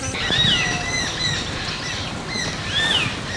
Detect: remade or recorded recorded